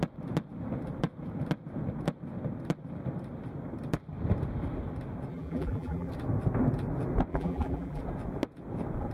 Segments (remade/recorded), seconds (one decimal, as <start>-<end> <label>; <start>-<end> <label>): 0.0-5.3 recorded; 5.3-6.1 remade; 6.1-7.3 recorded; 7.3-8.0 remade; 8.0-9.1 recorded